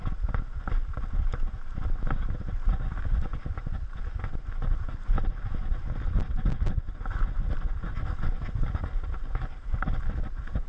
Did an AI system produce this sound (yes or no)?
no